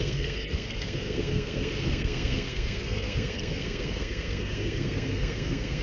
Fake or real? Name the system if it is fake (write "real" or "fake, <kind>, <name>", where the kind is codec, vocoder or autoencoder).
fake, codec, SNAC